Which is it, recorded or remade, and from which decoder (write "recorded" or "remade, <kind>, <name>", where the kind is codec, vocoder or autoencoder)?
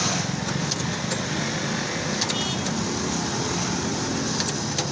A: recorded